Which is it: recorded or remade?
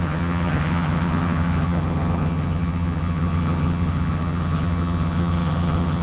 remade